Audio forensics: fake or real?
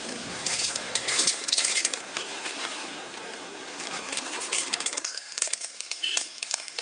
fake